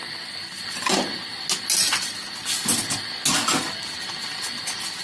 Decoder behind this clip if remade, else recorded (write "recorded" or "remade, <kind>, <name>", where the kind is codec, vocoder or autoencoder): recorded